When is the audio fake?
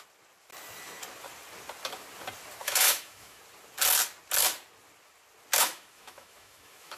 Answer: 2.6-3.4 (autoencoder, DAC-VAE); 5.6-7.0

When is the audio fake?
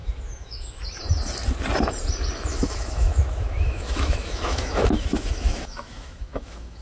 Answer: 0.0-0.8 (autoencoder, DAC-VAE); 2.5-6.8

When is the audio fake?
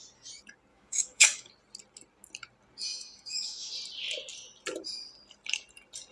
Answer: 0.7-1.5 (autoencoder, DAC-VAE); 2.9-3.7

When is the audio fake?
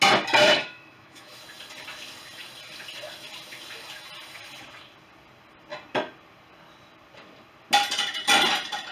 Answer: 0.4-1.4 (autoencoder, DAC-VAE)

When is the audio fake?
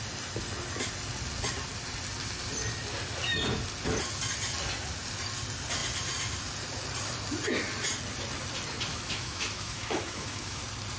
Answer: 8.9-10.6 (autoencoder, DAC-VAE)